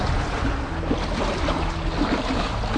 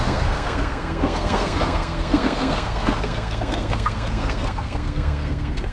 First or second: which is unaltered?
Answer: first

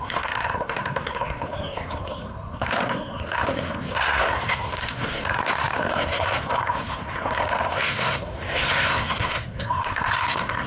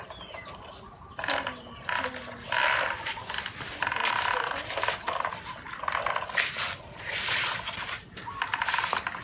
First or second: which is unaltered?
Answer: second